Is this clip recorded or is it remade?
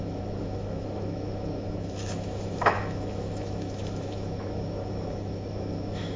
remade